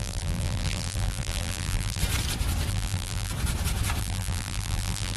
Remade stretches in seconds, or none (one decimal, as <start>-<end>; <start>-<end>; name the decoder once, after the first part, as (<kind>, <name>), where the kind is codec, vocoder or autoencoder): 0.0-2.0 (vocoder, BigVGAN v2); 2.7-3.3; 4.0-5.2